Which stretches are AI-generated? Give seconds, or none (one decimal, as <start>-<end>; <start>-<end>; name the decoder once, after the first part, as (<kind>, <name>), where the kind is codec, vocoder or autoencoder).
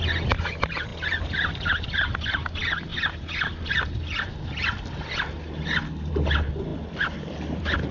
6.7-7.9 (vocoder, BigVGAN v2)